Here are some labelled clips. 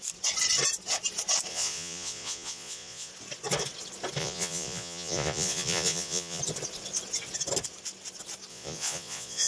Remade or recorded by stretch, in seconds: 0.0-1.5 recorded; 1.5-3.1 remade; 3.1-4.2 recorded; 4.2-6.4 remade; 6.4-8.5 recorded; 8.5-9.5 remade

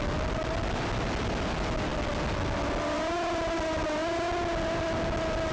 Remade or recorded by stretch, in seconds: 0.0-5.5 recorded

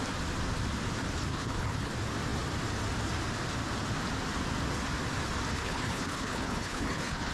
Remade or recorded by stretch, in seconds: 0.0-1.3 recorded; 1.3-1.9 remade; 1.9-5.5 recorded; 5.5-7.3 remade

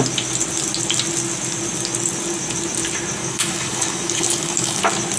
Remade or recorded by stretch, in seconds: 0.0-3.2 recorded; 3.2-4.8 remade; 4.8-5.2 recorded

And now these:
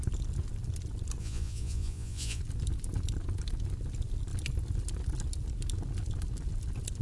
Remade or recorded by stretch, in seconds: 0.0-1.2 recorded; 1.2-2.4 remade; 2.4-7.0 recorded

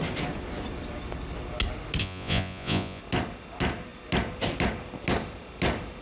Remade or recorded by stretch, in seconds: 0.0-2.0 recorded; 2.0-3.0 remade; 3.0-6.0 recorded

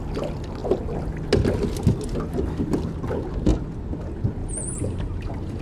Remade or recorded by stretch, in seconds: 0.0-4.4 recorded; 4.4-5.6 remade

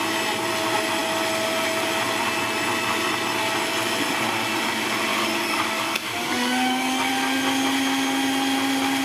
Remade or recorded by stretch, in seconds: 0.0-5.1 recorded; 5.1-7.1 remade; 7.1-9.0 recorded